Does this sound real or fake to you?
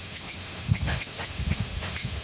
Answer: fake